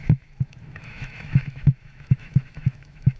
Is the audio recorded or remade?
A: remade